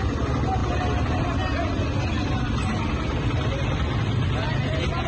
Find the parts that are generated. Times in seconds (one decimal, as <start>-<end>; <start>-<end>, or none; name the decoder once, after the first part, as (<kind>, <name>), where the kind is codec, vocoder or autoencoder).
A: none